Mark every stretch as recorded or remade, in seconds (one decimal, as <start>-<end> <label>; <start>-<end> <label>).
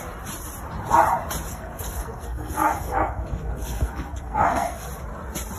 0.0-1.5 recorded; 1.5-4.9 remade; 4.9-5.6 recorded